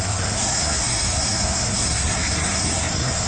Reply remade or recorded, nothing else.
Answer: remade